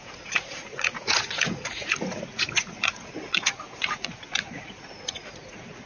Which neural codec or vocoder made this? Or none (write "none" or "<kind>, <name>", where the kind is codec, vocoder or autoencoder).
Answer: vocoder, Vocos